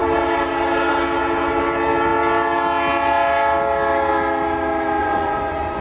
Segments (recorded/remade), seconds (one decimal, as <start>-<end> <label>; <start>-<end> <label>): 0.0-5.0 recorded; 5.0-5.8 remade